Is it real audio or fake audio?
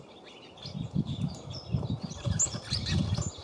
real